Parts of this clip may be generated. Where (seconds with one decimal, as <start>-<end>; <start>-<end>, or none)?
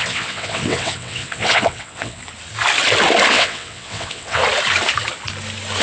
0.0-2.2; 3.3-4.4